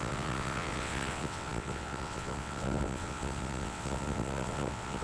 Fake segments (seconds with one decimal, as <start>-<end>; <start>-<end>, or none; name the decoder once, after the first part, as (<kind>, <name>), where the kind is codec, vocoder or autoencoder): 0.0-5.0 (vocoder, WaveNeXt)